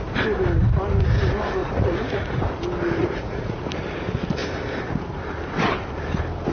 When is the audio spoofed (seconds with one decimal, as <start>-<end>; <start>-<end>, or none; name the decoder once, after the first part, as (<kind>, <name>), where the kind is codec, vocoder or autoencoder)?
1.6-2.4 (vocoder, Vocos); 3.0-3.6

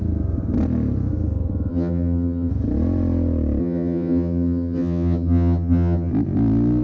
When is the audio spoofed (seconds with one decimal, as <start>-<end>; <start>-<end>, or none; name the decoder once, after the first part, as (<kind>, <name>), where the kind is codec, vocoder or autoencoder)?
1.7-2.5 (vocoder, HiFi-GAN); 3.6-6.1

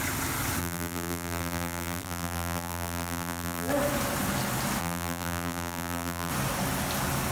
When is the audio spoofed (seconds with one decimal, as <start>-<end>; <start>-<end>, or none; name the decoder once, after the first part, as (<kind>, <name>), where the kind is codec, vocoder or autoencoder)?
0.6-3.7 (vocoder, BigVGAN v2); 4.8-6.3

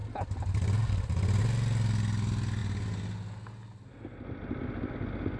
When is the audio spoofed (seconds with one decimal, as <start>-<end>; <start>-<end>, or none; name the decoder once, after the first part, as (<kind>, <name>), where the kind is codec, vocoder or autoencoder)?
none